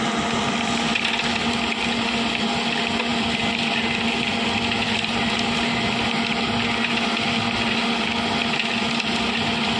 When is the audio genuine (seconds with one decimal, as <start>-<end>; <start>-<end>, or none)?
0.0-9.8

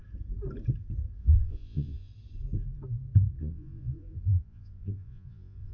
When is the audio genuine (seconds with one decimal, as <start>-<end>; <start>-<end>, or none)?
0.0-1.2; 2.1-3.4

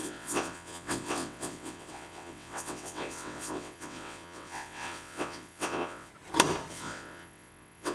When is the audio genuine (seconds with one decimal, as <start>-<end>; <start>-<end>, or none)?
6.1-6.7

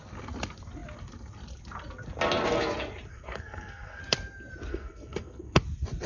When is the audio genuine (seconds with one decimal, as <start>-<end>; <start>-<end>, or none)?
0.0-3.1; 4.0-4.7; 5.6-6.1

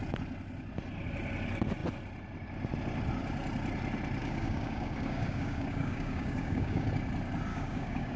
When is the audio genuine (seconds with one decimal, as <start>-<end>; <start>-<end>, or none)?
0.0-4.2; 6.9-7.5

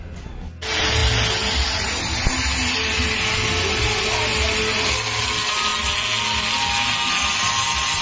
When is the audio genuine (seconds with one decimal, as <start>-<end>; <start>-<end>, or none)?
0.0-8.0

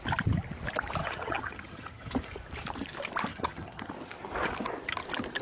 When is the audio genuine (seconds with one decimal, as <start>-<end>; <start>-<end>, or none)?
0.0-1.0; 2.1-3.3; 3.9-5.4